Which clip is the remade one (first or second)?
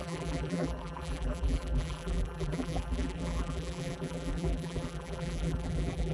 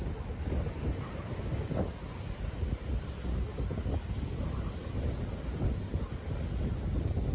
first